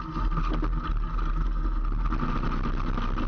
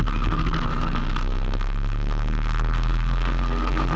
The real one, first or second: first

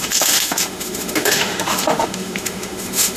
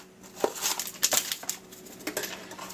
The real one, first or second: second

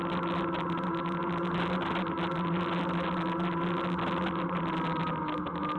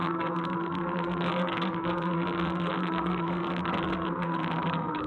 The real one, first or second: first